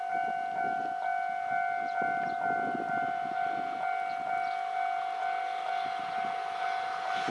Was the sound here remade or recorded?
recorded